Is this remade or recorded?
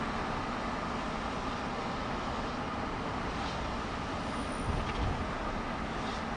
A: recorded